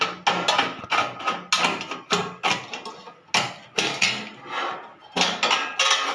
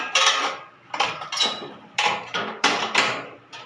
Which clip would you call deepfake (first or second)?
second